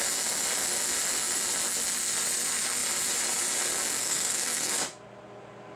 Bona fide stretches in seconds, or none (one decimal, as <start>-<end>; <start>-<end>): 0.0-4.0; 4.7-5.8